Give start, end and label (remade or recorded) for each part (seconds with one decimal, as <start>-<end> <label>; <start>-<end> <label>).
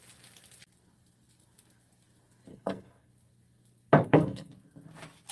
0.0-2.5 recorded; 2.5-3.1 remade; 3.1-4.0 recorded; 4.0-4.5 remade; 4.5-5.3 recorded